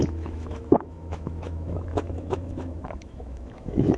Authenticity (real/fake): fake